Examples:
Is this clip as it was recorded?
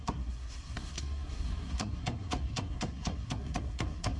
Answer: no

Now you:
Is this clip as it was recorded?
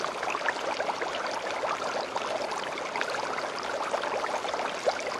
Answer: yes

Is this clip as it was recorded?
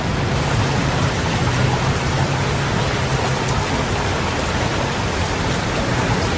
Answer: yes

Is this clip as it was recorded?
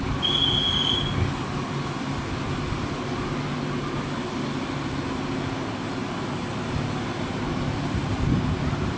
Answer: yes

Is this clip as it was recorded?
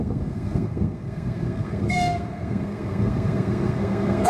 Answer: no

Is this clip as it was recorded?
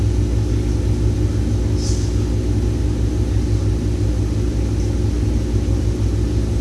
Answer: yes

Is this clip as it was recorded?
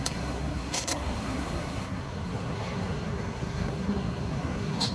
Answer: no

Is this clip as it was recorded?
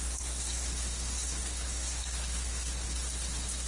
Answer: no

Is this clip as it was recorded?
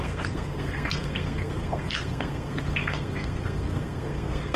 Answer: no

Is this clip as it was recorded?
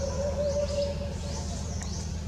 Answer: yes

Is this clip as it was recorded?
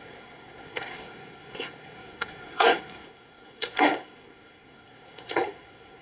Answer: no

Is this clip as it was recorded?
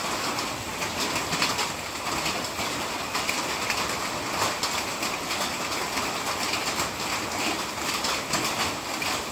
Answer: yes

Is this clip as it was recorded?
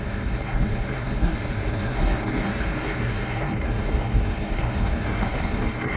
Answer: no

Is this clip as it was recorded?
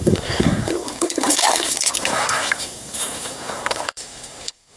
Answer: no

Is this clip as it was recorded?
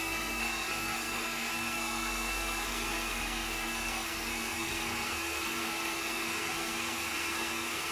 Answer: no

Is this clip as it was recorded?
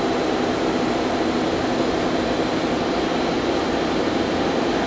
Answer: yes